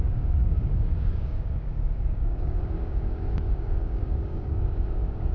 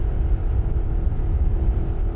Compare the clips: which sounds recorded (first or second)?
second